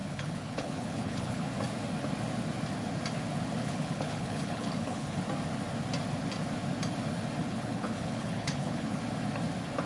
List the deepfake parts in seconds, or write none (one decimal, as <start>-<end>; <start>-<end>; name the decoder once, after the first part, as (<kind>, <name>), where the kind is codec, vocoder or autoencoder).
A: 0.0-1.5 (codec, HILCodec); 3.6-5.2; 7.4-9.0